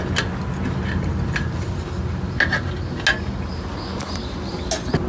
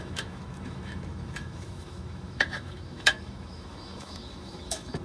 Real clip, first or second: first